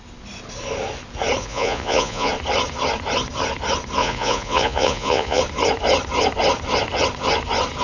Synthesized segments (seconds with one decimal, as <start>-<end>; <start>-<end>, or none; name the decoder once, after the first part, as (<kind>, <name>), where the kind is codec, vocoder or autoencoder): 1.4-2.3 (vocoder, Vocos); 4.0-5.4